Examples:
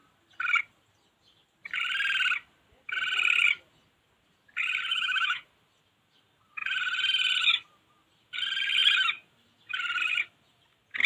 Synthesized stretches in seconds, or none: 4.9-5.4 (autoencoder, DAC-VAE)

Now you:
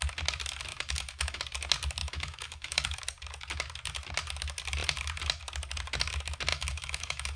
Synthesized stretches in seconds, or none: 0.7-1.4 (autoencoder, DAC-VAE); 2.0-3.0; 6.5-7.4

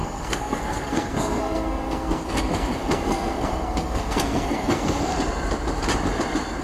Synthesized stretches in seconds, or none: 0.0-5.1 (codec, SNAC)

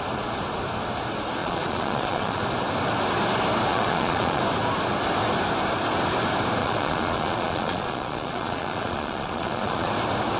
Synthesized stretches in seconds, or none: 1.4-2.4 (vocoder, Vocos); 3.7-4.4; 6.6-9.9

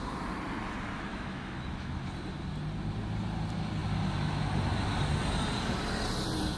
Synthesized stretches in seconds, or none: 1.1-1.9 (autoencoder, DAC-VAE)

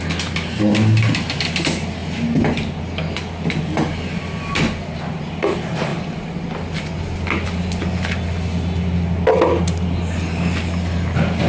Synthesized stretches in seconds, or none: none

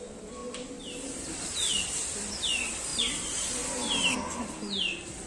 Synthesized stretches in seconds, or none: none